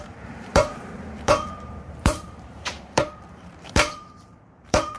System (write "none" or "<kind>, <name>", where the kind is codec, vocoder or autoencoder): vocoder, BigVGAN v2